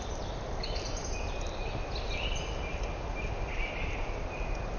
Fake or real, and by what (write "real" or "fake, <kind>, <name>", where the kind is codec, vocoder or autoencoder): real